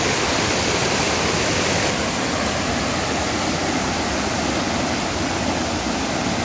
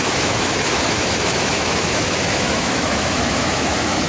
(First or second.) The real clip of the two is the first